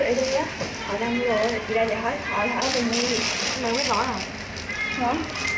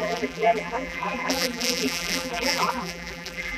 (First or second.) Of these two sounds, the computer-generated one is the second